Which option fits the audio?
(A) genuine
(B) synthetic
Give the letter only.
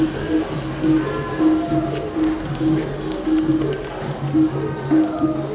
A